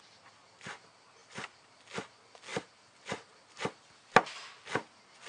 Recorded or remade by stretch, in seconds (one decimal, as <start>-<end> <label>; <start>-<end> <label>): 0.0-1.2 recorded; 1.2-1.7 remade; 1.7-5.3 recorded